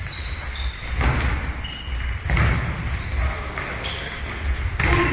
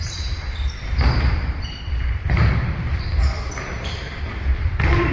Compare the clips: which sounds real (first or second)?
first